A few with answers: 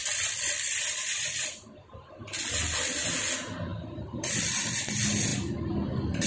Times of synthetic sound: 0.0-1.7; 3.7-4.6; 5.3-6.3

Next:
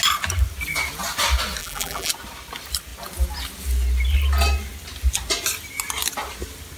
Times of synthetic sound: 1.6-2.1

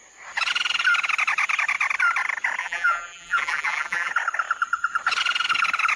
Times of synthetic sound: 2.6-4.1